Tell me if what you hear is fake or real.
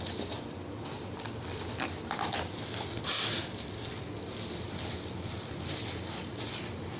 real